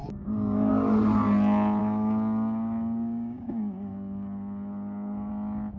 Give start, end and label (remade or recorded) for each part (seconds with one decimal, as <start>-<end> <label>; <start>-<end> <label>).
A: 0.0-0.7 remade; 0.7-1.8 recorded; 1.8-5.3 remade; 5.3-5.8 recorded